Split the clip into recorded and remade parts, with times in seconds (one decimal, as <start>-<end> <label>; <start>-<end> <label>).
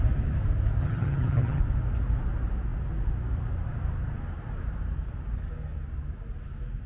0.0-0.8 recorded; 0.8-1.6 remade; 1.6-6.9 recorded